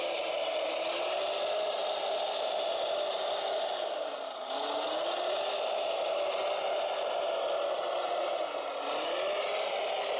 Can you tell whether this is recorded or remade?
recorded